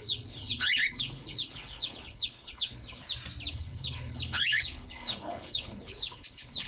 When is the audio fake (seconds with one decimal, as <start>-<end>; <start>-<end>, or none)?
0.0-3.0; 3.5-6.7